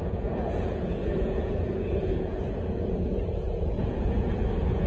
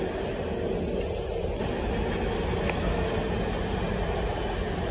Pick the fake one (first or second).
first